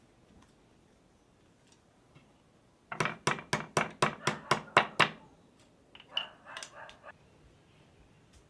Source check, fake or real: real